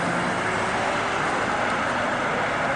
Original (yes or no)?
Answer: yes